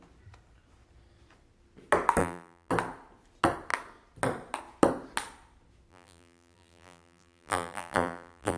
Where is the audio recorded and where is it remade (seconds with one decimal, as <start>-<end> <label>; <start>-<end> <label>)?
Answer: 0.0-2.2 recorded; 2.2-2.7 remade; 2.7-5.9 recorded; 5.9-8.6 remade